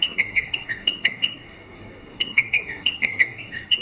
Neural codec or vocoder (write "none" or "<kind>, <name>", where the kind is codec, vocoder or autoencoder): codec, SNAC